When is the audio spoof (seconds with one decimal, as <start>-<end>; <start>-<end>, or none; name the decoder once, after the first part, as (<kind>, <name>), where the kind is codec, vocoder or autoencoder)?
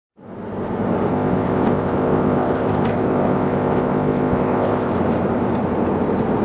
1.1-4.9 (codec, ZipCodec)